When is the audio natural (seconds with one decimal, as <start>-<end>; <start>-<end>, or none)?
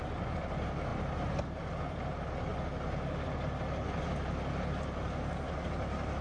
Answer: 0.0-6.2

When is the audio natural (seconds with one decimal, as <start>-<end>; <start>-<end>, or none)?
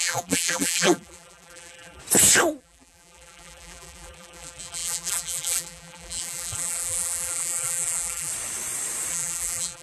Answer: 2.0-2.6; 8.3-9.1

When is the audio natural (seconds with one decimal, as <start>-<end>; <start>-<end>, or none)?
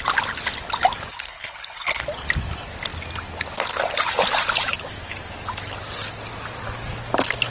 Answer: 0.0-1.1; 2.0-7.5